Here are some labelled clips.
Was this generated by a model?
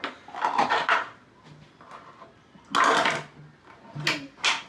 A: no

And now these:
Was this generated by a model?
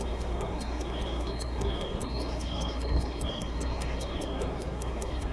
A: yes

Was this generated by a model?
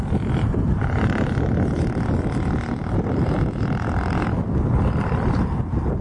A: no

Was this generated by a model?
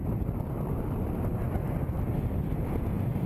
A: no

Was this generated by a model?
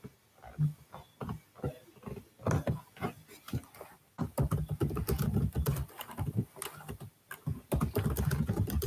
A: no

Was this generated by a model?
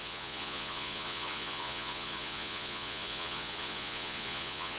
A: yes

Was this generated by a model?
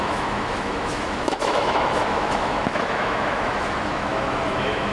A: yes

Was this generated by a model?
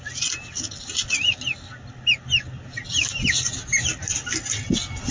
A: no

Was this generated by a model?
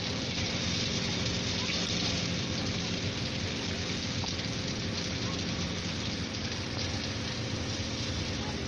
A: no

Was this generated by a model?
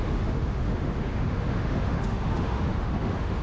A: yes